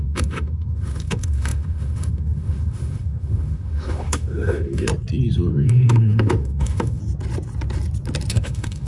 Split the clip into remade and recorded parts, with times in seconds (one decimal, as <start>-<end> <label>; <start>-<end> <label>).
0.0-4.9 remade; 4.9-5.5 recorded; 5.5-7.0 remade; 7.0-8.3 recorded; 8.3-8.9 remade